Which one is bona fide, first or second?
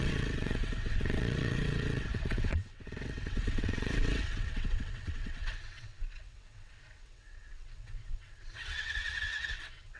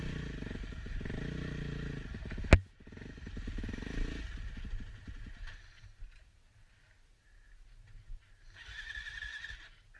second